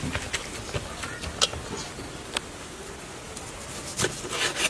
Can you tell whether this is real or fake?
real